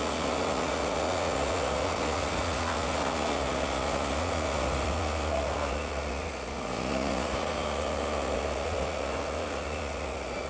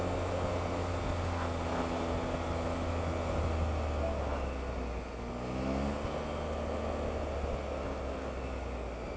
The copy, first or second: first